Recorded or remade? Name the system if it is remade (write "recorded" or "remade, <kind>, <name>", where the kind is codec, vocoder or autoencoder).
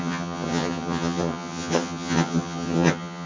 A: remade, vocoder, HiFi-GAN